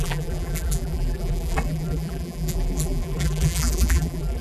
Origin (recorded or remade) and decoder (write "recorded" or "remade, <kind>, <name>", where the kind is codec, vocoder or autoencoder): remade, vocoder, BigVGAN v2